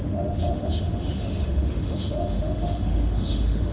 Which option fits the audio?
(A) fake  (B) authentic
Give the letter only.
A